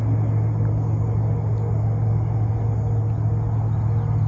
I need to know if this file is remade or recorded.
recorded